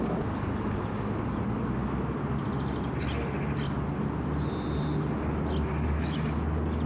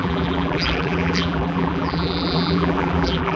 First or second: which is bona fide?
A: first